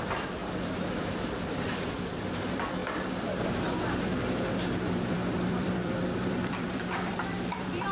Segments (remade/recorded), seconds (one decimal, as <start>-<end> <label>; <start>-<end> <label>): 0.0-0.4 remade; 0.4-0.9 recorded; 0.9-7.9 remade